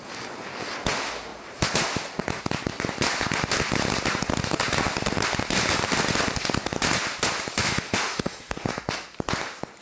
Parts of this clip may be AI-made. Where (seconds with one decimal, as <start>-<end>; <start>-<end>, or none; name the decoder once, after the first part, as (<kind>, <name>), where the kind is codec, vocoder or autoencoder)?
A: 7.6-8.8 (autoencoder, DAC-VAE)